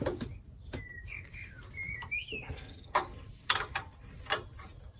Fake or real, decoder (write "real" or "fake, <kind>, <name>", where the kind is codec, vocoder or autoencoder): real